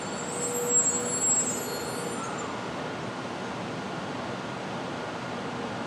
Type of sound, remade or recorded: recorded